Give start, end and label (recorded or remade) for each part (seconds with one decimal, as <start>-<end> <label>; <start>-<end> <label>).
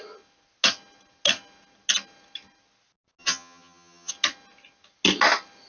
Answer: 0.0-3.2 recorded; 3.2-4.1 remade; 4.1-5.7 recorded